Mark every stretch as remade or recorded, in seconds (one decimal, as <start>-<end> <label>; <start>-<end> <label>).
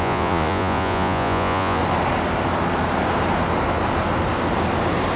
0.0-1.8 remade; 1.8-5.2 recorded